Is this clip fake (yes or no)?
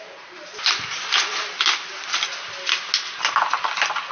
no